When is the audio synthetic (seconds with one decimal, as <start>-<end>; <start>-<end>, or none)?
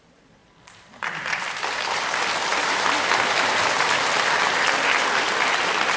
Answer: 0.4-1.6; 2.5-3.1